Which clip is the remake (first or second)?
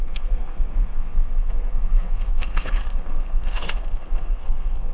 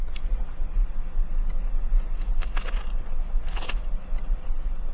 first